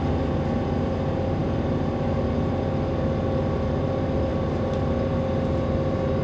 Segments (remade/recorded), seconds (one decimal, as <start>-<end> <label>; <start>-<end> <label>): 0.0-1.4 recorded; 1.4-2.2 remade; 2.2-6.2 recorded